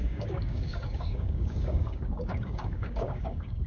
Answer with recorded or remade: remade